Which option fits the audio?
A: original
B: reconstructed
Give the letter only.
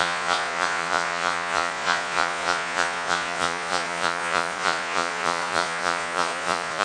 B